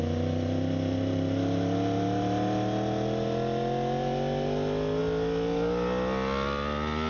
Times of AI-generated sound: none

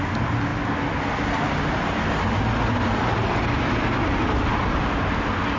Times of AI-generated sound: none